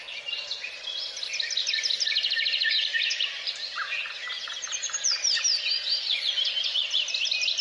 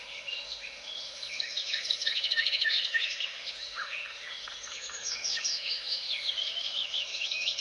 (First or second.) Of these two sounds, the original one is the first